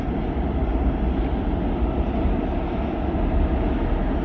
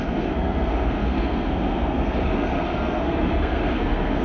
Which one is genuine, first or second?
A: first